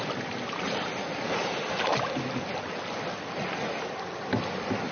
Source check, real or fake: real